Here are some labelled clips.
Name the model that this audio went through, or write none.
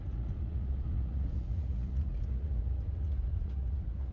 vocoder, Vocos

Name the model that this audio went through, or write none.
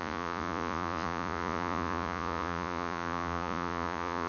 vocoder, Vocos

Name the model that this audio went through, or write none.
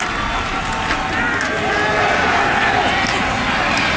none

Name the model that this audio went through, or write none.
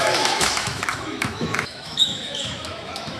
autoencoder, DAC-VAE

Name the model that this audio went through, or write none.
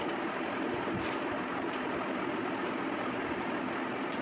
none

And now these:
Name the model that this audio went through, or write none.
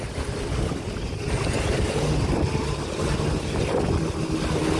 none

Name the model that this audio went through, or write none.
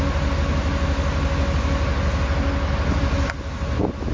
none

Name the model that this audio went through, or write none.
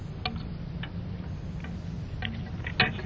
none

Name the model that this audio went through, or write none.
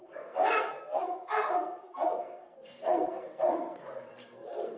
codec, SNAC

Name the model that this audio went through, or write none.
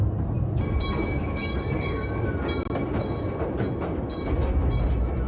none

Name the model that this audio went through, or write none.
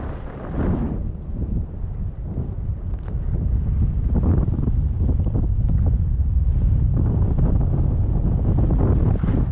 none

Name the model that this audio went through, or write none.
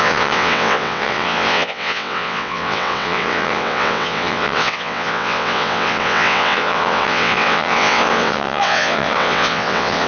vocoder, WaveNeXt